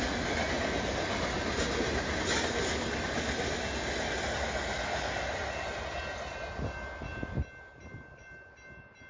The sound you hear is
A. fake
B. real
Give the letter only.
B